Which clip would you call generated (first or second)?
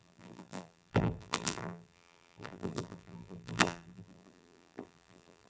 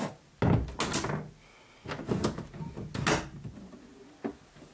first